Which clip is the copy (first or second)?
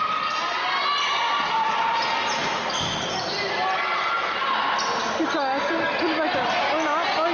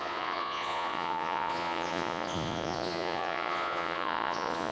second